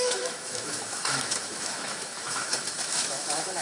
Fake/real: fake